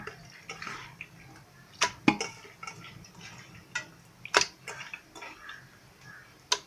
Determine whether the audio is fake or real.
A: real